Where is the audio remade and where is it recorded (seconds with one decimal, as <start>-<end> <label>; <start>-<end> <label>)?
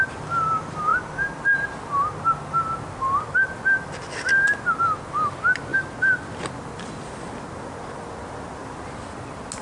0.0-9.6 recorded